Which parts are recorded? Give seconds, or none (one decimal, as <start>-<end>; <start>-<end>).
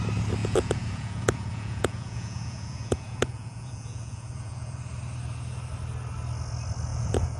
0.0-0.4; 4.8-6.9